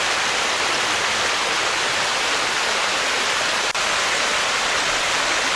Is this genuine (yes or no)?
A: yes